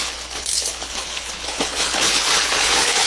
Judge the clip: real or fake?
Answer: fake